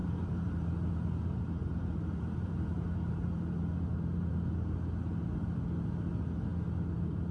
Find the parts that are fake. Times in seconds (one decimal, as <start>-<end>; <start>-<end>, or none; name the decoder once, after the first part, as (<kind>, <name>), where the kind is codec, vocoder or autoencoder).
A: 0.0-4.4 (vocoder, BigVGAN v2)